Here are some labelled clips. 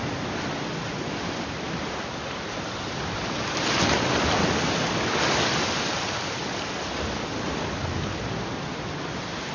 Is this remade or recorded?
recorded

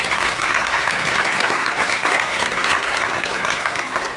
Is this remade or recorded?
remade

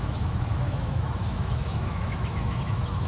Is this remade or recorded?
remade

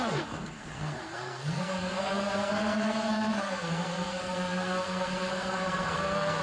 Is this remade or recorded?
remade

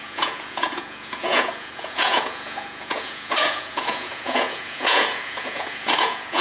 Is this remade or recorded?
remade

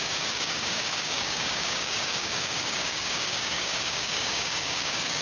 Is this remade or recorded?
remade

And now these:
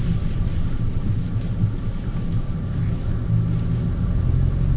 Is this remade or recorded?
recorded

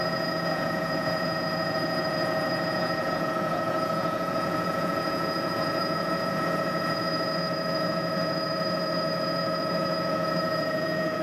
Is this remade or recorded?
remade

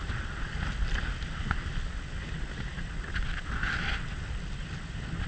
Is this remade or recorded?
recorded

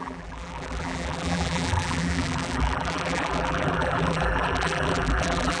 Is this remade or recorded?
remade